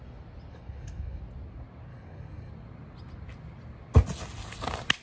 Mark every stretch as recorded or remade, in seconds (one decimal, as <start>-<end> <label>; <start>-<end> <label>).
0.0-0.5 recorded; 0.5-1.2 remade; 1.2-1.9 recorded; 1.9-2.5 remade; 2.5-5.0 recorded